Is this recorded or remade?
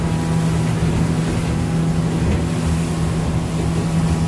recorded